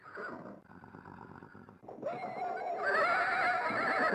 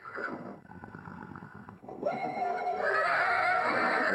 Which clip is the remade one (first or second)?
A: second